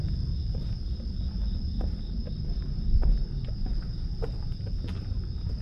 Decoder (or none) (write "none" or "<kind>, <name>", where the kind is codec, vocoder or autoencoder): none